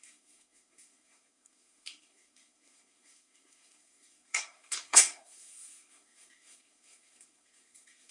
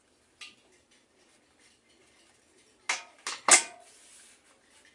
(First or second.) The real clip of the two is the second